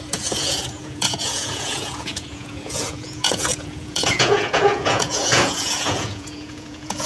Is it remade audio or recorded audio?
remade